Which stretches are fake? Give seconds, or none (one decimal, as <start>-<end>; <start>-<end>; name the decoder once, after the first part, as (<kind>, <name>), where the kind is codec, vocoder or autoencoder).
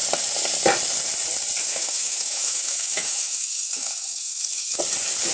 1.6-4.8 (autoencoder, DAC-VAE)